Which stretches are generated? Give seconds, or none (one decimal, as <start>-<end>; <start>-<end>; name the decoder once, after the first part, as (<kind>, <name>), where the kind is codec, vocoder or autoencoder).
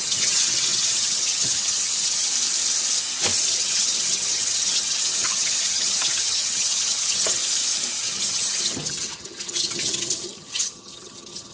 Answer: 0.0-2.3 (vocoder, HiFi-GAN); 3.5-7.4; 8.0-11.5